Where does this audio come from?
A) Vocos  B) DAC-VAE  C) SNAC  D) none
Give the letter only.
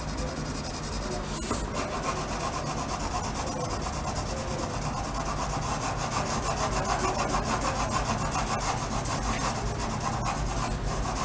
D